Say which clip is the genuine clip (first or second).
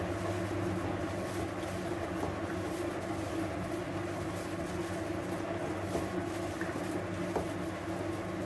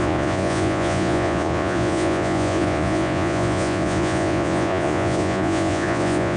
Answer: first